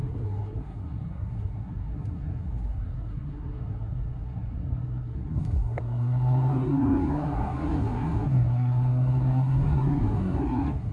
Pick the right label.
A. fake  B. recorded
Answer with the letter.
A